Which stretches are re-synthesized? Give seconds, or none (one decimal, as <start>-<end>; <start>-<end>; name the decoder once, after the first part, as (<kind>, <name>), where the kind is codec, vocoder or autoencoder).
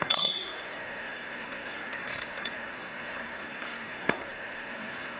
0.0-5.2 (codec, SNAC)